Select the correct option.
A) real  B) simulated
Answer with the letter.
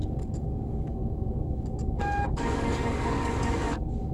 B